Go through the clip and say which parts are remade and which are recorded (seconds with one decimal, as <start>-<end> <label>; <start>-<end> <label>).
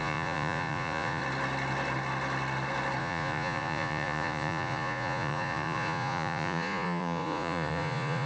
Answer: 0.0-1.2 remade; 1.2-3.0 recorded; 3.0-8.3 remade